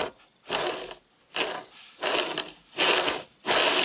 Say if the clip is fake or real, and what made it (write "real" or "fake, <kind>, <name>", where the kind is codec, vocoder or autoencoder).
real